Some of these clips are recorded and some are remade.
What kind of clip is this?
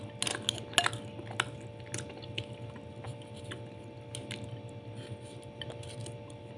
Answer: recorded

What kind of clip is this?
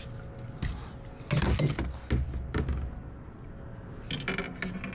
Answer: recorded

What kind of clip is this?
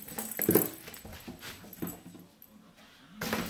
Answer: recorded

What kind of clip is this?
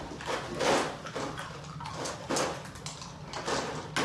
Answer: recorded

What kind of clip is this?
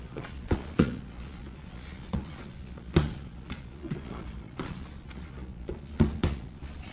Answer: remade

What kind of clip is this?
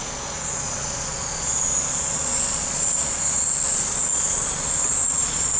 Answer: remade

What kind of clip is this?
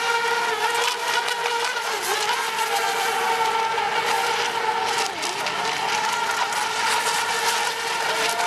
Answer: recorded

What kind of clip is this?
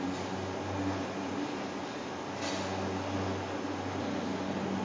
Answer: recorded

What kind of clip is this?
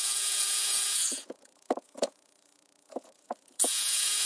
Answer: remade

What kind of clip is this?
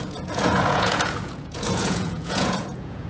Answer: remade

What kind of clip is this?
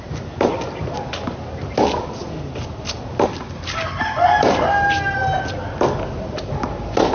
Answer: recorded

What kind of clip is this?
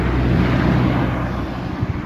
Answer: recorded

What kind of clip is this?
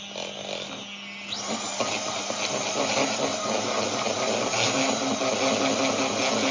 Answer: recorded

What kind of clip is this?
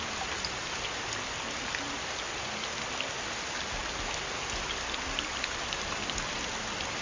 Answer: recorded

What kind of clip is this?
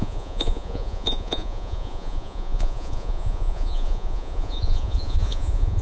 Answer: remade